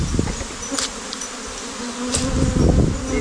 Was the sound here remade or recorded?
recorded